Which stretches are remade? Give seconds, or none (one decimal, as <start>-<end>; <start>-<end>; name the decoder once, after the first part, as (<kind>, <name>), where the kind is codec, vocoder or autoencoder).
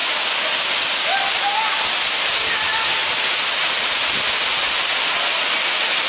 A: 0.0-1.0 (vocoder, BigVGAN v2)